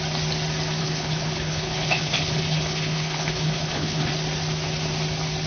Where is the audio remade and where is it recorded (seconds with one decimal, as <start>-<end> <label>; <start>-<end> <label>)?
0.0-0.8 recorded; 0.8-4.1 remade; 4.1-5.5 recorded